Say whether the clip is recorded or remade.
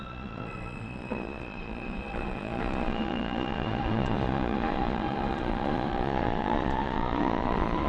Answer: remade